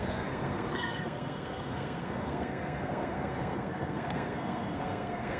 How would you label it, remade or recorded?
remade